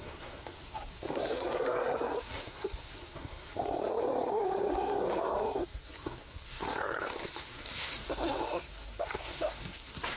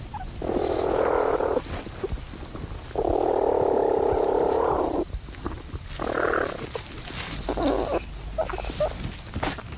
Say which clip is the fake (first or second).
first